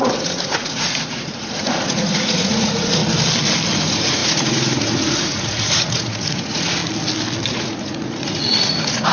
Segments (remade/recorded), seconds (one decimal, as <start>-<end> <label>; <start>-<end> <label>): 0.0-3.0 remade; 3.0-3.8 recorded; 3.8-6.8 remade; 6.8-7.5 recorded; 7.5-9.1 remade